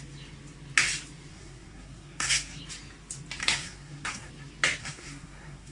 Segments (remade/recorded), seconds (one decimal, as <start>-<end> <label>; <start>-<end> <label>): 0.0-1.3 recorded; 1.3-2.6 remade; 2.6-3.4 recorded; 3.4-4.3 remade; 4.3-4.8 recorded; 4.8-5.7 remade